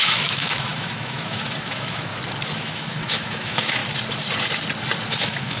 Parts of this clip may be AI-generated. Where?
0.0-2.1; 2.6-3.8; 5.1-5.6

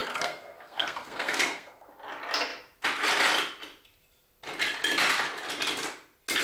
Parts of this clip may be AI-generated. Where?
0.0-1.9

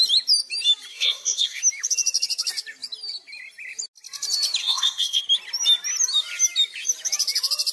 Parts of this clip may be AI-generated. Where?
0.9-1.6; 4.6-5.2

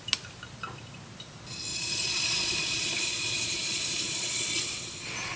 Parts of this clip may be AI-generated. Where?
1.7-4.6

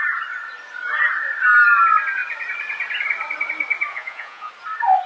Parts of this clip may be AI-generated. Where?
3.9-4.5

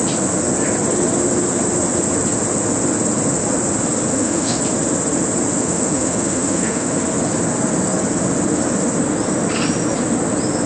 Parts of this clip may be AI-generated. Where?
4.1-4.6; 5.6-7.0

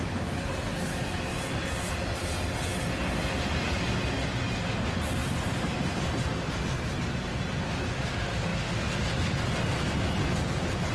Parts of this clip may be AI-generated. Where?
none

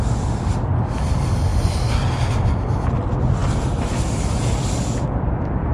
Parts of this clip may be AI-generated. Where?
none